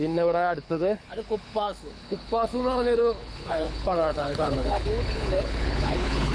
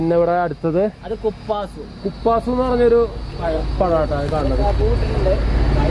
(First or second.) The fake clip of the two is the first